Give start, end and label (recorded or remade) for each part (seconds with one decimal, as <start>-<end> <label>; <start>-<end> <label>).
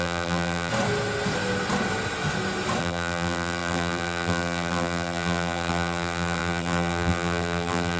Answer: 0.0-0.7 remade; 0.7-2.8 recorded; 2.8-8.0 remade